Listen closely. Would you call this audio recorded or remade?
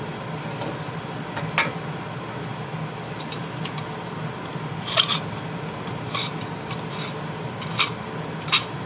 recorded